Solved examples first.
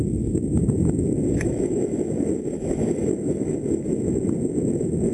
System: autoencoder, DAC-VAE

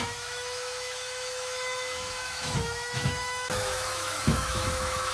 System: autoencoder, DAC-VAE